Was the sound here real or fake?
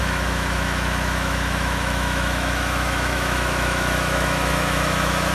fake